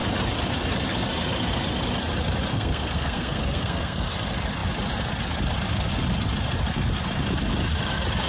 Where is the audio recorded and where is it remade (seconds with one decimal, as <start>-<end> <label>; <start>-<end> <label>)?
0.0-2.5 recorded; 2.5-4.1 remade; 4.1-8.3 recorded